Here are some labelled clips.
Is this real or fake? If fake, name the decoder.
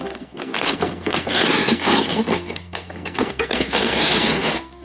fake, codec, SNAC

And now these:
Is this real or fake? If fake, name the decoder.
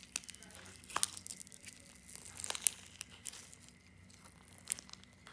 real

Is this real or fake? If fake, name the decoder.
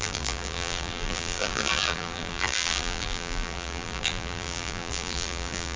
fake, vocoder, BigVGAN v2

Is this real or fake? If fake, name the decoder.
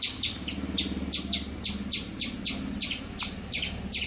real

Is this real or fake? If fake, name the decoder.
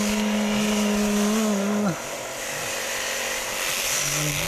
real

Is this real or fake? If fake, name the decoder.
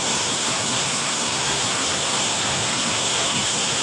fake, codec, SNAC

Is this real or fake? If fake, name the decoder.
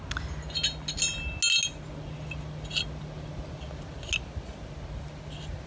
real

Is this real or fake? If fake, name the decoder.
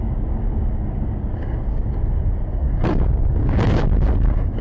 fake, codec, DAC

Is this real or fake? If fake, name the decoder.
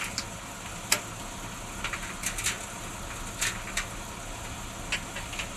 real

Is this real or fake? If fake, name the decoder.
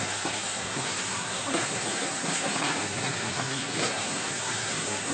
fake, codec, SNAC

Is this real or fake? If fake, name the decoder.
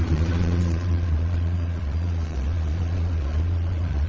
fake, vocoder, Vocos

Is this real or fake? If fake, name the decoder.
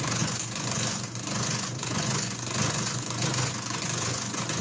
fake, vocoder, Vocos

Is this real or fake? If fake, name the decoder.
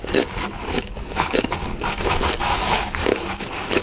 fake, codec, DAC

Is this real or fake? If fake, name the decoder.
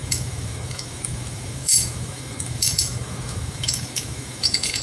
fake, autoencoder, DAC-VAE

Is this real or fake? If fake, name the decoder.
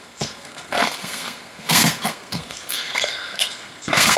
fake, codec, SNAC